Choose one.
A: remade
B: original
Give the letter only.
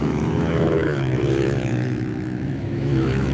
A